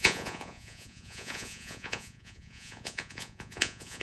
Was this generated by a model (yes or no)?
yes